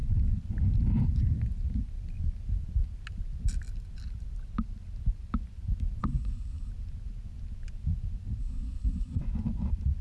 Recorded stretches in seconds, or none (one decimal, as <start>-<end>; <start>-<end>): 0.0-6.0; 6.7-8.4; 9.2-10.0